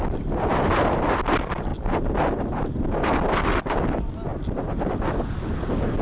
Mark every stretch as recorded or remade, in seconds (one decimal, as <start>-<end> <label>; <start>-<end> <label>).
0.0-6.0 recorded